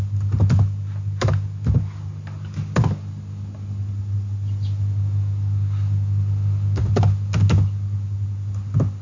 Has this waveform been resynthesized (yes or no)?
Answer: no